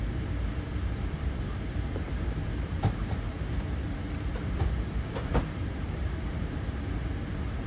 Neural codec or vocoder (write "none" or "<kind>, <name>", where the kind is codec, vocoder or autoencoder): vocoder, BigVGAN v2